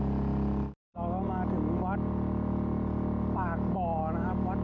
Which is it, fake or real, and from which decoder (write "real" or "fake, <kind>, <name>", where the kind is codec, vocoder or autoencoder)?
real